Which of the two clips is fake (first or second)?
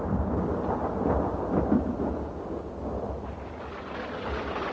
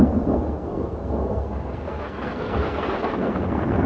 second